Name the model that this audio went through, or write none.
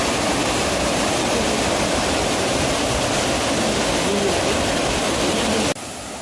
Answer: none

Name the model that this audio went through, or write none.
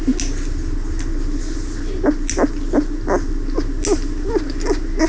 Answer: none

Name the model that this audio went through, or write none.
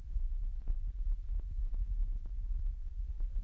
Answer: none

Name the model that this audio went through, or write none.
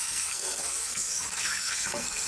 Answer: codec, SNAC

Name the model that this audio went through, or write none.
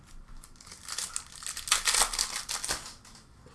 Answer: none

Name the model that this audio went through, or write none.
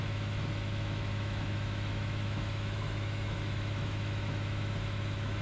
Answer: autoencoder, DAC-VAE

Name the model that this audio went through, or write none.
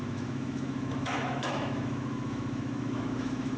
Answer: autoencoder, DAC-VAE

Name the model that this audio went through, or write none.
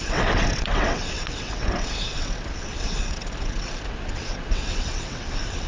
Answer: vocoder, WaveNeXt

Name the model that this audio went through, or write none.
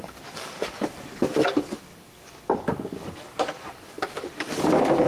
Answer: codec, DAC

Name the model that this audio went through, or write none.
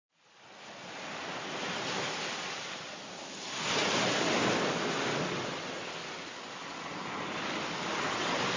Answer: none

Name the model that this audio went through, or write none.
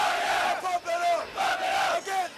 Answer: none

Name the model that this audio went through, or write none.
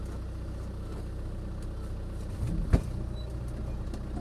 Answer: none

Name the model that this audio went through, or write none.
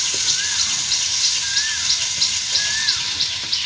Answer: none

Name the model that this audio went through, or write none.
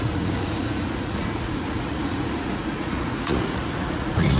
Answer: vocoder, Vocos